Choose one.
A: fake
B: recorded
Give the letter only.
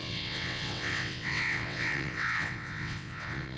A